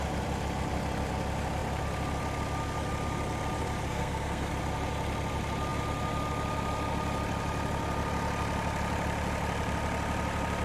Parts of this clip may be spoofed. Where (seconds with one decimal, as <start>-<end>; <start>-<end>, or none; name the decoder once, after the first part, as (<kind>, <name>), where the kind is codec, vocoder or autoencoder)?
3.9-4.5 (codec, SNAC)